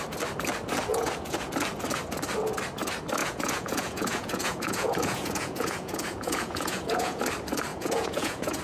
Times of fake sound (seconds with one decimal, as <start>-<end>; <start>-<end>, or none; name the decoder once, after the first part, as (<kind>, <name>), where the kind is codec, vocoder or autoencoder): 0.9-1.5 (vocoder, Vocos); 3.2-7.2; 7.7-8.6